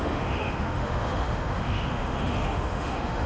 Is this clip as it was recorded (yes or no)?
no